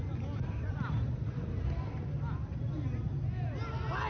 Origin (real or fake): real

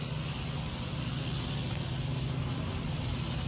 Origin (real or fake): real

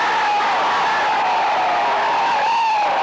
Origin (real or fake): real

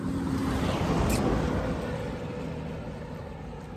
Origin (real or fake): real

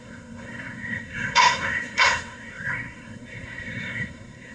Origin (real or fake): fake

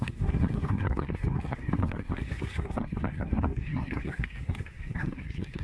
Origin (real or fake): fake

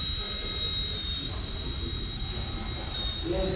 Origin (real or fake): real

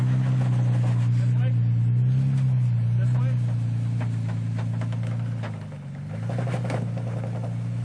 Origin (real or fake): real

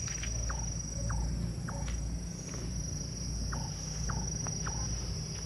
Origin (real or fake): real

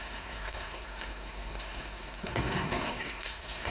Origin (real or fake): fake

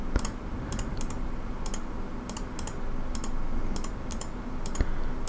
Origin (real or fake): real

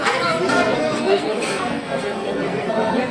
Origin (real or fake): fake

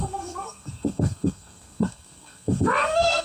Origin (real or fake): fake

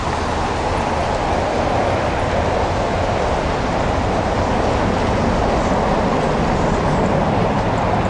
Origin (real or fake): real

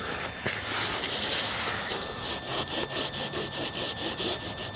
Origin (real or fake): real